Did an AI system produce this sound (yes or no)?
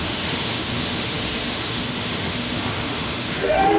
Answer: yes